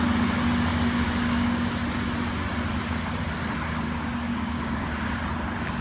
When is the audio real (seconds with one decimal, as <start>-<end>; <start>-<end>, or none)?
0.0-0.7; 1.7-4.3; 4.9-5.8